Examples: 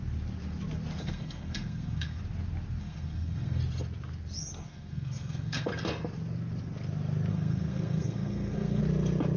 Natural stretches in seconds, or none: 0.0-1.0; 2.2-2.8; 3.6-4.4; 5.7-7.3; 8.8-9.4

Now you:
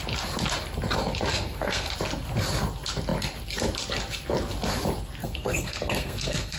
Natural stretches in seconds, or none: 0.0-1.3; 1.9-5.2

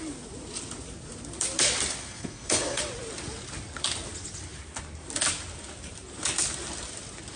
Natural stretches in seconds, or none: 0.0-2.0; 2.8-7.4